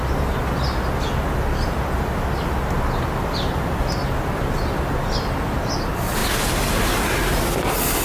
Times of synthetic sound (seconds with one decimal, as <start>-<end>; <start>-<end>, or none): none